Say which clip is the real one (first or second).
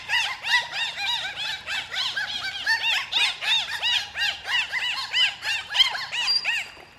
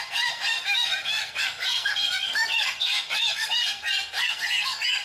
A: first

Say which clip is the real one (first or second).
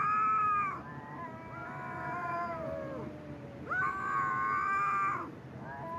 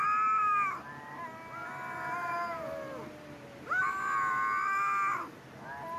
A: second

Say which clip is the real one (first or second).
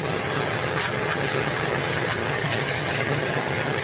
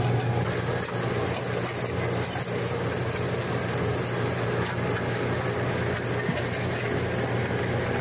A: second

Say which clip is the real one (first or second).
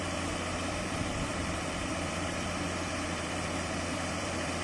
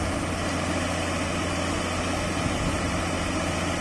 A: second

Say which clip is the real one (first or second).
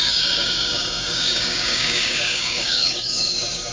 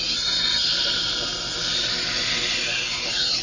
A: second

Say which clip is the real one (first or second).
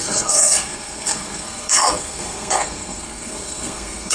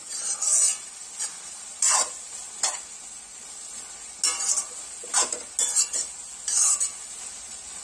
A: second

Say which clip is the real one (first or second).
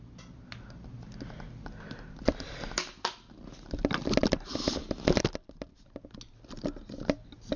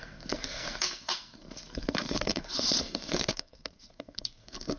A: first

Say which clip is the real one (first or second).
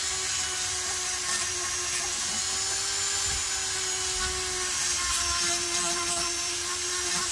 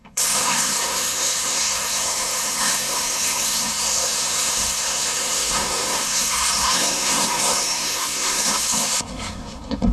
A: first